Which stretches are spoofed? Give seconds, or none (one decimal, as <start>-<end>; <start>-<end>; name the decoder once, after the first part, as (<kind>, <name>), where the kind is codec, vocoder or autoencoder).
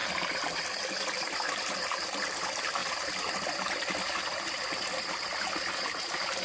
none